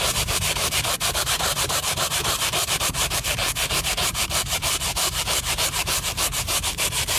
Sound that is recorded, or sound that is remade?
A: remade